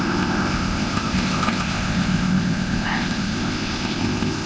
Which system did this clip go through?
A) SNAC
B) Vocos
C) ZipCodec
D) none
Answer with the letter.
C